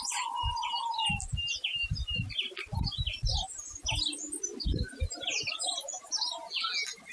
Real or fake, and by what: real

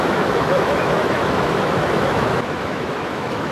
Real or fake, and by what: fake, autoencoder, DAC-VAE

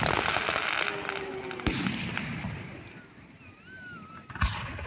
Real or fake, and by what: real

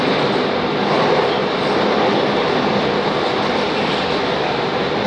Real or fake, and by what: real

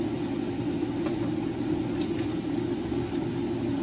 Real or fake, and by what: real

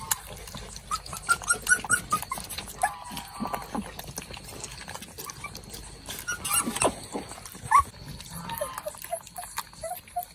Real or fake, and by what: real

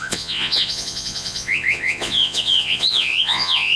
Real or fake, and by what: fake, vocoder, Vocos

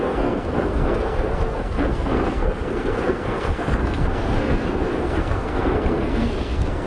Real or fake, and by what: fake, codec, SNAC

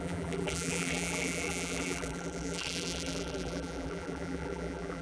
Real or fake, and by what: fake, vocoder, BigVGAN v2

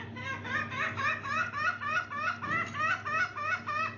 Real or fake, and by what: real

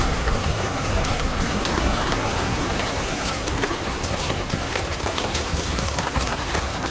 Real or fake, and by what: fake, codec, SNAC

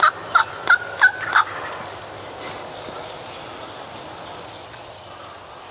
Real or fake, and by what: real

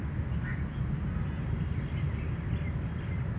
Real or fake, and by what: real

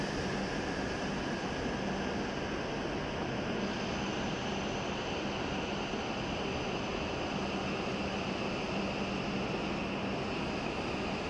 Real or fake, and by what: real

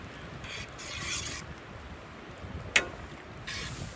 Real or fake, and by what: real